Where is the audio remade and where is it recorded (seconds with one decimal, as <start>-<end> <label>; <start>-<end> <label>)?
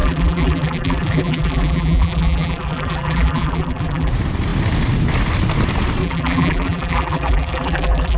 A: 0.0-4.1 remade; 4.1-6.0 recorded; 6.0-8.2 remade